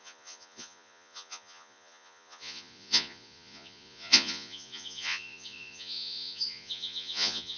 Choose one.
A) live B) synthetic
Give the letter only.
B